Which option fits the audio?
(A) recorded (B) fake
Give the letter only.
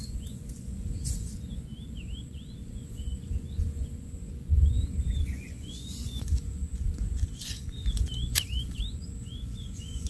B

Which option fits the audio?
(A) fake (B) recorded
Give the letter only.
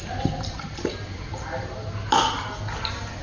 B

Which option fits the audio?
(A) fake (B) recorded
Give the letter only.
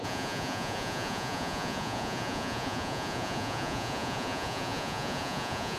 A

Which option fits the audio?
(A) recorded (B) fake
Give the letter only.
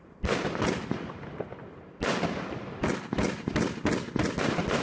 A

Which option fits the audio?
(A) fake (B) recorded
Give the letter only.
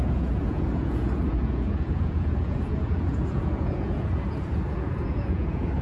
A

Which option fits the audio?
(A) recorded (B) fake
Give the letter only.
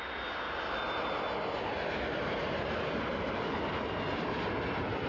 A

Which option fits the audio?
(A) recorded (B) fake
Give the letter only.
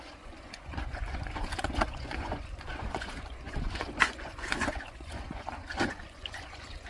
B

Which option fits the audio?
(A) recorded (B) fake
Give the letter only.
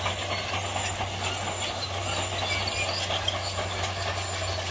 A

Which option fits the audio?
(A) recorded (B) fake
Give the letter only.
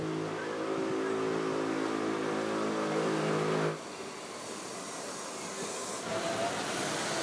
A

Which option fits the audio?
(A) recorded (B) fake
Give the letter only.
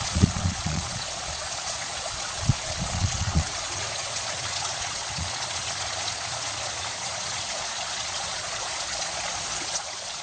B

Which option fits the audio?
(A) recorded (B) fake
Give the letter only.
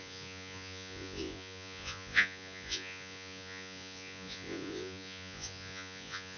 B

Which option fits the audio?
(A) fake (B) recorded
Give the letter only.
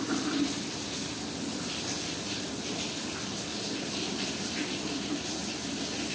B